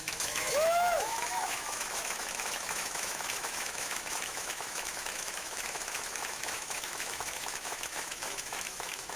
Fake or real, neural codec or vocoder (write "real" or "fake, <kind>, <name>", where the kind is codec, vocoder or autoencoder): fake, autoencoder, DAC-VAE